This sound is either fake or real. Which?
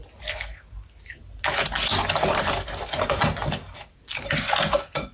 real